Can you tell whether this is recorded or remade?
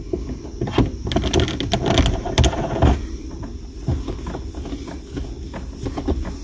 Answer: recorded